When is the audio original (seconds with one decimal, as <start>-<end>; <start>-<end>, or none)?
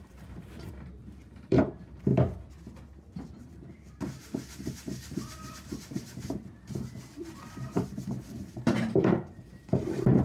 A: 2.1-3.4